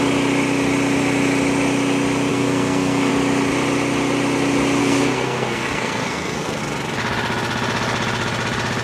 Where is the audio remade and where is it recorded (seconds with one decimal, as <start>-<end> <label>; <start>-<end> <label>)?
0.0-2.3 recorded; 2.3-3.1 remade; 3.1-4.8 recorded; 4.8-6.6 remade; 6.6-8.8 recorded

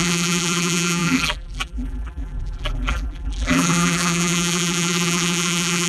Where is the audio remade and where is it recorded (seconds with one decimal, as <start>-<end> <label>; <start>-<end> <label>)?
0.0-5.9 remade

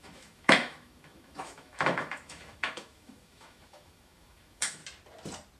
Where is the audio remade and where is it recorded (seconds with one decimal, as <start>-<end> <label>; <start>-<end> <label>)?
0.0-4.8 remade; 4.8-5.6 recorded

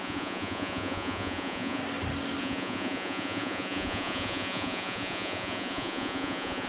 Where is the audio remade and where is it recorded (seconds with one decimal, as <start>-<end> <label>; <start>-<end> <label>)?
0.0-1.8 remade; 1.8-2.4 recorded; 2.4-6.7 remade

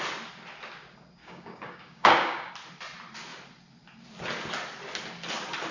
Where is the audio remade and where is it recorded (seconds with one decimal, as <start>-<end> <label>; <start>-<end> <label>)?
0.0-1.2 recorded; 1.2-2.5 remade; 2.5-5.7 recorded